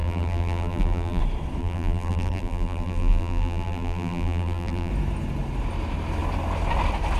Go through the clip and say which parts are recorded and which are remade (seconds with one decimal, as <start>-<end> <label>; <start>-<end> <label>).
0.0-1.2 remade; 1.2-1.6 recorded; 1.6-4.9 remade; 4.9-7.2 recorded